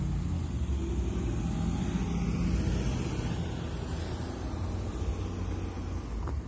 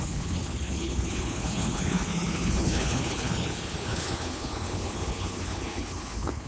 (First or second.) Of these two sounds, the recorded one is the first